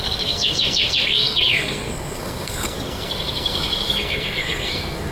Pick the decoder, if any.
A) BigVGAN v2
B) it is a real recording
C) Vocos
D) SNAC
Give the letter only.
D